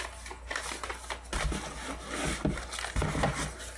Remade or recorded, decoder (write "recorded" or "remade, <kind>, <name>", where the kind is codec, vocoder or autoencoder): recorded